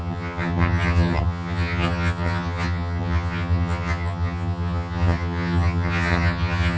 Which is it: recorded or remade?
remade